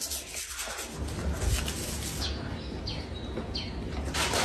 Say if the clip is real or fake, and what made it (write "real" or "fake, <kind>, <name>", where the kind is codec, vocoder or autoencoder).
real